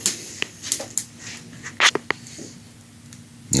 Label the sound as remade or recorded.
recorded